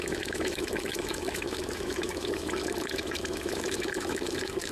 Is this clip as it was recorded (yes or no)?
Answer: no